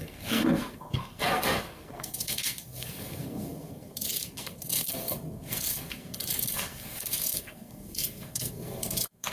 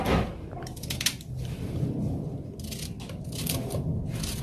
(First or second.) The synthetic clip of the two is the first